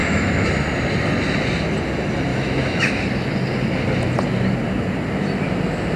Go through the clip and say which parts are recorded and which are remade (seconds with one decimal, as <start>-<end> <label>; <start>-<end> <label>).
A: 0.0-0.5 remade; 0.5-2.3 recorded; 2.3-2.9 remade; 2.9-6.0 recorded